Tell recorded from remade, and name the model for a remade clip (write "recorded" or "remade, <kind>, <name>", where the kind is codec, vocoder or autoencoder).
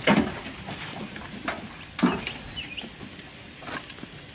recorded